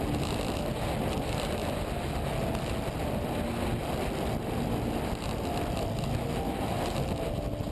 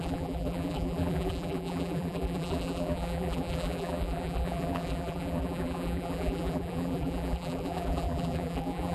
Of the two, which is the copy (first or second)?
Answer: second